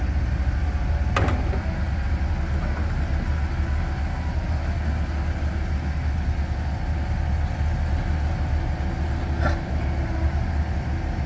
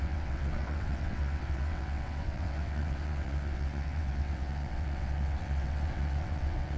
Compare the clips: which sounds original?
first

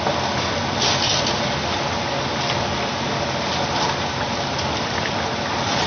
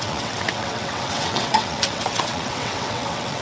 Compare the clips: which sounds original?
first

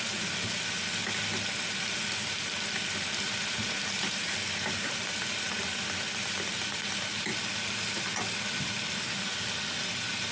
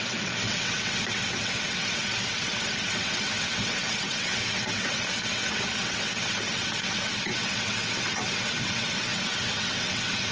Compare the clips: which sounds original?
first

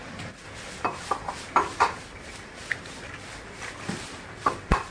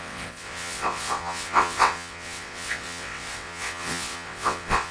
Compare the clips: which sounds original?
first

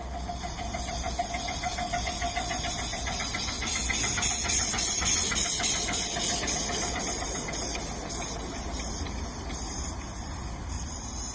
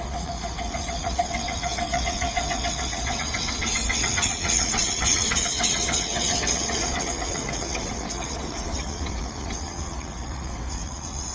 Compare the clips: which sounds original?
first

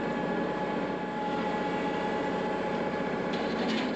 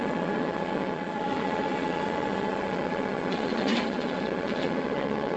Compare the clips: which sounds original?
first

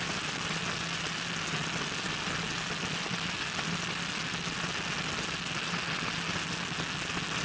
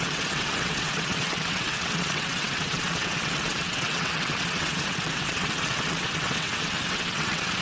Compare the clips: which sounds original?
first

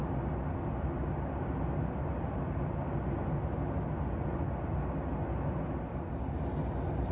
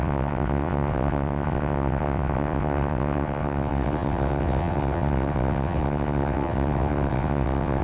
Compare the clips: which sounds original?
first